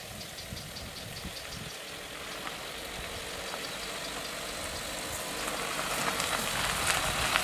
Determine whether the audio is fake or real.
real